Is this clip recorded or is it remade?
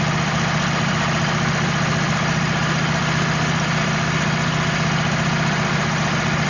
recorded